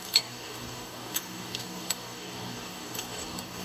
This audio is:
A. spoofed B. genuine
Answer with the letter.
A